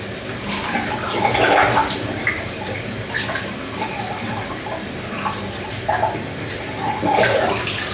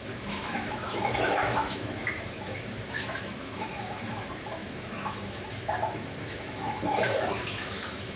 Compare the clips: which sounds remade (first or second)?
second